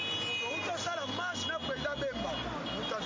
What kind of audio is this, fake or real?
real